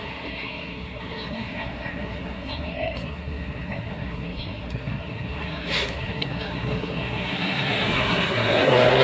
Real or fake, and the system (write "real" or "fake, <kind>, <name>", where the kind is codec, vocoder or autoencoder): fake, codec, SNAC